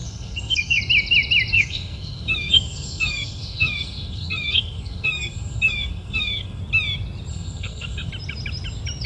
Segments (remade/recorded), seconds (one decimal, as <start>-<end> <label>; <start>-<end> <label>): 0.0-0.8 remade; 0.8-1.5 recorded; 1.5-6.6 remade; 6.6-7.3 recorded; 7.3-8.1 remade; 8.1-9.1 recorded